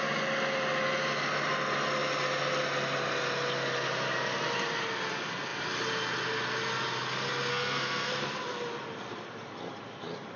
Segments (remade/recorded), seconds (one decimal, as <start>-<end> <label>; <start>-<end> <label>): 0.0-7.5 recorded; 7.5-8.1 remade; 8.1-10.4 recorded